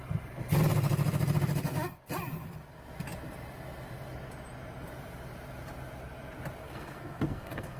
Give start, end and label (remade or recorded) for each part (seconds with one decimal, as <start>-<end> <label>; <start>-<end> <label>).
0.0-6.6 recorded; 6.6-7.8 remade